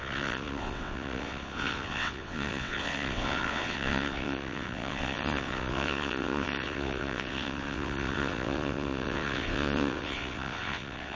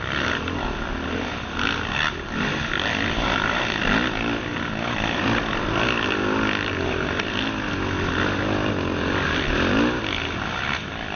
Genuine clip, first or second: second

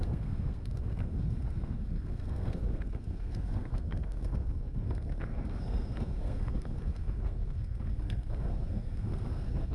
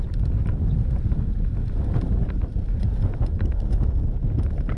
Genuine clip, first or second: second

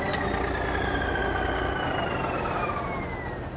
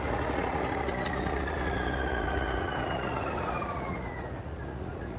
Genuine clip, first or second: first